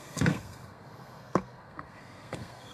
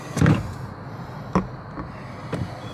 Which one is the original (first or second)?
second